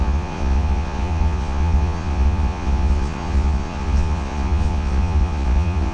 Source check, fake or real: fake